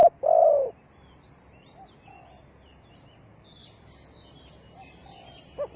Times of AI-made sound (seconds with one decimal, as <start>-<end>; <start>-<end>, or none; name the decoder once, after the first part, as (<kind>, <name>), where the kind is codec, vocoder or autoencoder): none

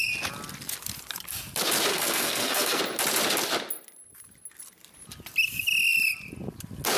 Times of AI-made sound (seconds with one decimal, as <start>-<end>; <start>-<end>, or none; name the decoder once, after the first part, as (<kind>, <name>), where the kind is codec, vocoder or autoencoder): 1.9-2.8 (codec, SNAC)